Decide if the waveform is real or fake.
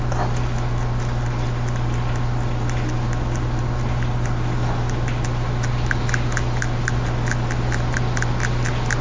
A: real